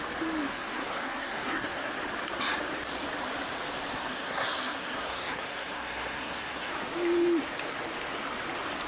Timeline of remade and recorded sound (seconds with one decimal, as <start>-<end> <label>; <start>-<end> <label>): 0.0-0.5 recorded; 0.5-1.9 remade; 1.9-3.9 recorded; 3.9-6.7 remade; 6.7-8.9 recorded